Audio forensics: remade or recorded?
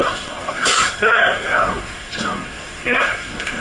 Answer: remade